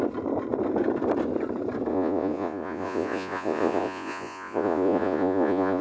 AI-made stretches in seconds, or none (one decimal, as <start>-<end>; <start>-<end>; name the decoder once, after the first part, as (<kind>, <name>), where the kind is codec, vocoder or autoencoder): 1.9-5.8 (vocoder, Vocos)